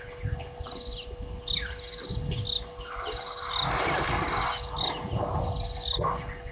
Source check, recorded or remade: recorded